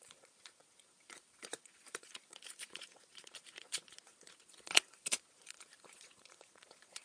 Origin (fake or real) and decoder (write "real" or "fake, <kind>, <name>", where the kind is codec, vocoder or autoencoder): fake, vocoder, Vocos